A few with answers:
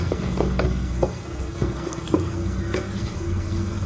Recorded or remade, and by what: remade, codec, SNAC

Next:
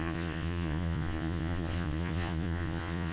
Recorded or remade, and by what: remade, vocoder, Vocos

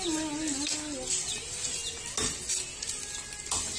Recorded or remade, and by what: recorded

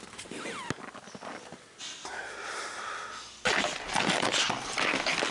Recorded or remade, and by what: recorded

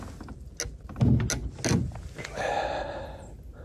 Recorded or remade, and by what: recorded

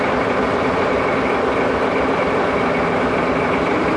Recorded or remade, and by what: recorded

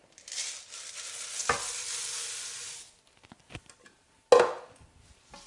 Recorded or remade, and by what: recorded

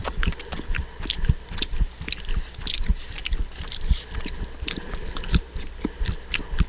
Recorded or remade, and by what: recorded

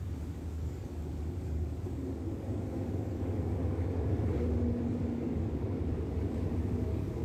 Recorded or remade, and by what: remade, codec, DAC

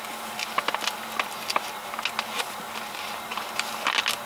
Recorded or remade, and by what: recorded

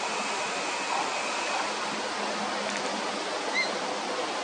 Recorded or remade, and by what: recorded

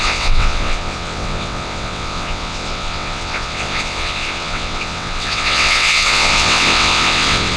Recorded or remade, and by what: remade, vocoder, WaveNeXt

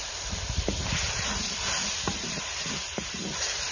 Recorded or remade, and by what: remade, vocoder, BigVGAN v2